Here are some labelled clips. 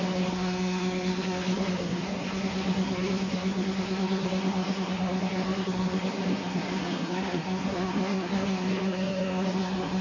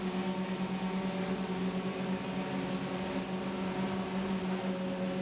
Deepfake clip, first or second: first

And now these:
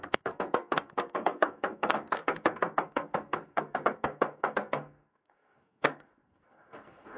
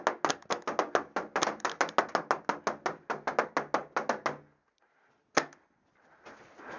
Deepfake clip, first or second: first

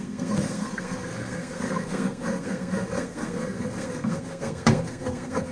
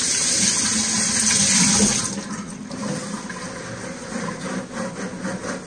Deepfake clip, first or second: first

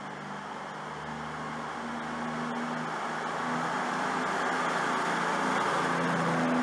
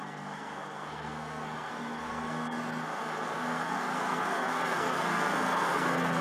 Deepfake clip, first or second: second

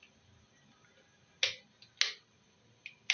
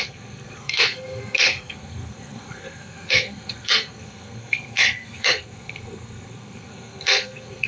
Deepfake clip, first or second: second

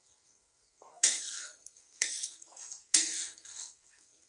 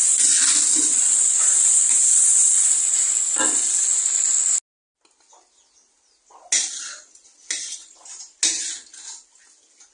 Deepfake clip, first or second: first